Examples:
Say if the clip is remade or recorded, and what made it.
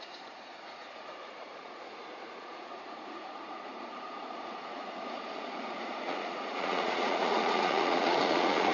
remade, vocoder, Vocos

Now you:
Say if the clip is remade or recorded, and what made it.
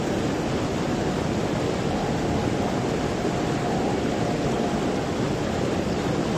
recorded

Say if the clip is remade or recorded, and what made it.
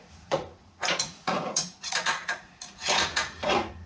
remade, vocoder, Vocos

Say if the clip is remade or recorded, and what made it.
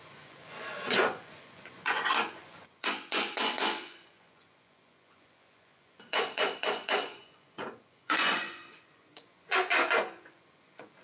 remade, vocoder, Vocos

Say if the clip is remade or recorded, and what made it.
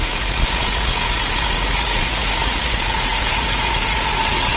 remade, vocoder, Vocos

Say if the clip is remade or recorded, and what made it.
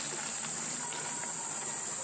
recorded